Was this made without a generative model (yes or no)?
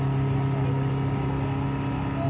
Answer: yes